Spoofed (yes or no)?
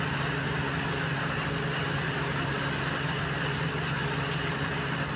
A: no